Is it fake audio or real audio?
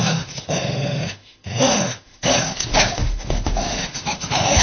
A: fake